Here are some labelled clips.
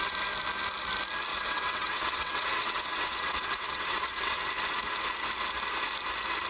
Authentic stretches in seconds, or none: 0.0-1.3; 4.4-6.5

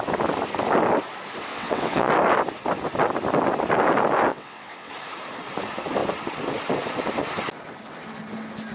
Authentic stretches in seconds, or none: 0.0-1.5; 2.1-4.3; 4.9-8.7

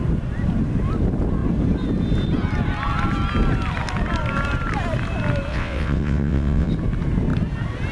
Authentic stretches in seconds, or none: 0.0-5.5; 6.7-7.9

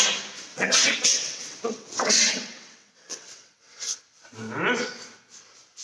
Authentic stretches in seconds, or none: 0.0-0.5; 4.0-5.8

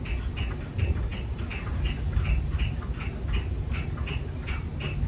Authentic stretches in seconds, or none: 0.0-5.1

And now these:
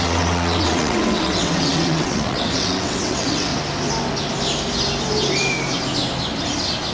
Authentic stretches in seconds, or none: 3.5-6.9

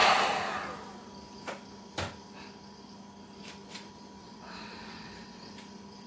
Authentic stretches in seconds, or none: 0.0-4.2; 5.5-6.1